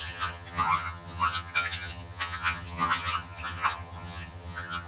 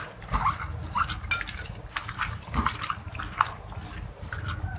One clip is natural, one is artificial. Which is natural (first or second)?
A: second